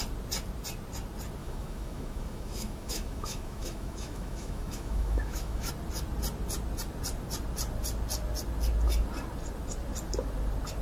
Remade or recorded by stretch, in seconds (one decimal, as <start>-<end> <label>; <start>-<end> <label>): 0.0-1.4 recorded; 1.4-5.7 remade; 5.7-10.8 recorded